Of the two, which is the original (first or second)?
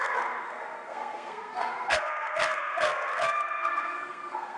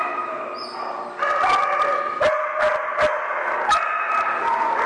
second